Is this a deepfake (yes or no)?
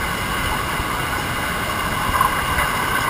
no